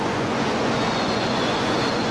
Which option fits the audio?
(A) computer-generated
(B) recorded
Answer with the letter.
A